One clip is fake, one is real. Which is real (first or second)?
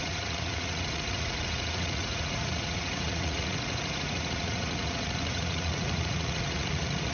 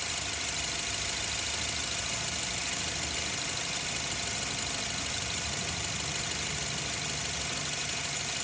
second